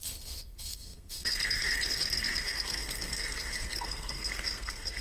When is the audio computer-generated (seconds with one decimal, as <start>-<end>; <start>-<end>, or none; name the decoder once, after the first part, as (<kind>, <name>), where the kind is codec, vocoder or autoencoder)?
0.0-5.0 (codec, SNAC)